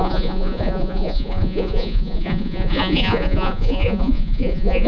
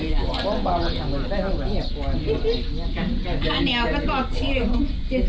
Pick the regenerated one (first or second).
first